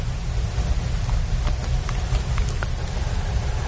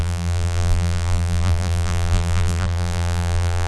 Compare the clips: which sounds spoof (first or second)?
second